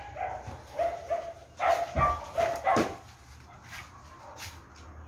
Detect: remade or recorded recorded